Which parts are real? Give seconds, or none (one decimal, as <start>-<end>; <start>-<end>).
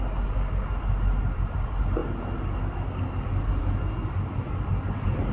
0.0-5.3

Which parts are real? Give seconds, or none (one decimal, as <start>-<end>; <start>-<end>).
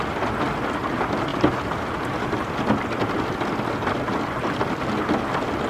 0.0-5.7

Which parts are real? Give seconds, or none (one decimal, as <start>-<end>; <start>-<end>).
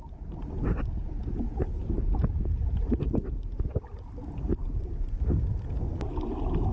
0.0-6.7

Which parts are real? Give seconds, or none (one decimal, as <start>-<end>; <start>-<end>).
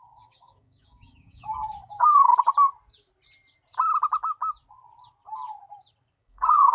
2.3-6.2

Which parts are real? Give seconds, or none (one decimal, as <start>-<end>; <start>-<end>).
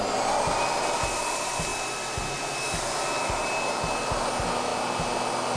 0.0-5.6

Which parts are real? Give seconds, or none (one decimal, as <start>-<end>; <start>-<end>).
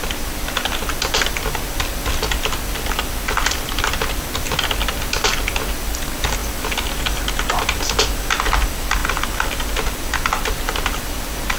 0.0-11.6